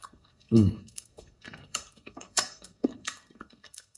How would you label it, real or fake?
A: fake